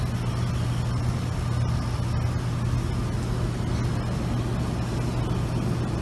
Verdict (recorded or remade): recorded